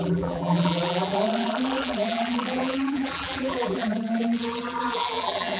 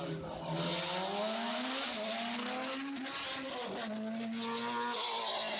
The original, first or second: second